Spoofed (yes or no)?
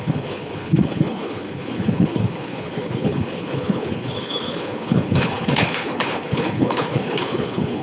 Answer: yes